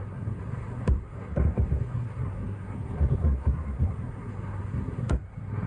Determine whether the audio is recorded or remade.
remade